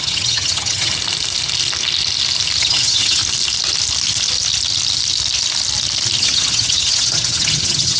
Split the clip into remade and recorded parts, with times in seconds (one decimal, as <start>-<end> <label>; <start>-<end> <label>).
0.0-0.9 remade; 0.9-2.6 recorded; 2.6-3.2 remade; 3.2-6.2 recorded; 6.2-8.0 remade